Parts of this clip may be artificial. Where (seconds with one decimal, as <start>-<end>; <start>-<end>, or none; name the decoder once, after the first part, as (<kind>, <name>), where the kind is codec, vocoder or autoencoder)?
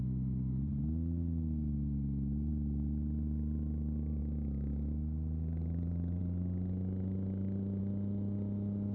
none